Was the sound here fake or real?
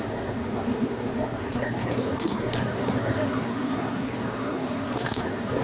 fake